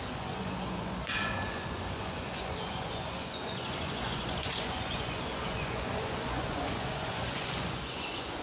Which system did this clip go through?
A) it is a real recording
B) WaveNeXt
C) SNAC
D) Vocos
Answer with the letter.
D